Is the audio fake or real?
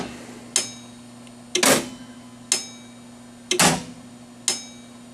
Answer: real